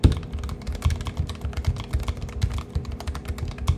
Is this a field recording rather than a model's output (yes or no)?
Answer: yes